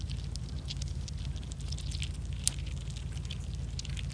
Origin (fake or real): real